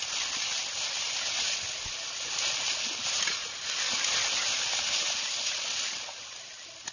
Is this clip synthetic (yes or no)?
no